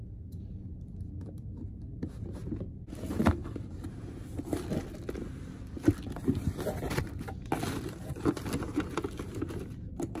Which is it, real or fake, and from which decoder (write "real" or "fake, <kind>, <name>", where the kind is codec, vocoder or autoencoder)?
real